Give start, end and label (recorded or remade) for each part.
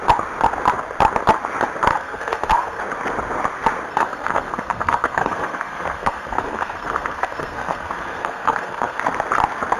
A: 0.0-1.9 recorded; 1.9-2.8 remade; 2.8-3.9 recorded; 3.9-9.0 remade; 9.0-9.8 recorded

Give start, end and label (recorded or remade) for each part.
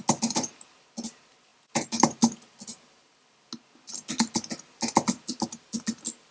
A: 0.0-6.3 recorded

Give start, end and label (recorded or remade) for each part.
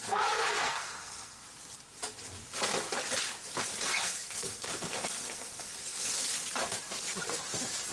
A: 0.0-1.4 remade; 1.4-3.8 recorded; 3.8-6.4 remade; 6.4-7.9 recorded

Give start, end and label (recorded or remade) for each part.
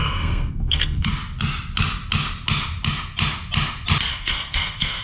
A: 0.0-1.1 remade; 1.1-4.1 recorded; 4.1-5.0 remade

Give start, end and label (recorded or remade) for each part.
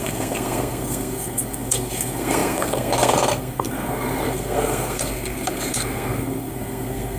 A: 0.0-7.2 remade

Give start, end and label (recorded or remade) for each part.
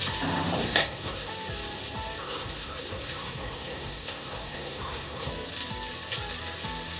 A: 0.0-0.6 recorded; 0.6-1.3 remade; 1.3-2.2 recorded; 2.2-5.3 remade; 5.3-7.0 recorded